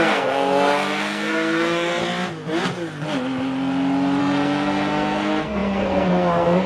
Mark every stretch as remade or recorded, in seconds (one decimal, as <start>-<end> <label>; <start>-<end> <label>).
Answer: 0.0-2.0 remade; 2.0-4.2 recorded; 4.2-6.7 remade

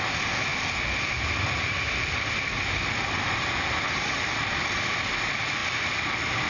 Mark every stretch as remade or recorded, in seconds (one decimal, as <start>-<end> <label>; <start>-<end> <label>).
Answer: 0.0-5.6 recorded; 5.6-6.5 remade